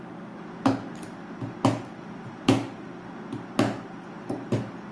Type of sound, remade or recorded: recorded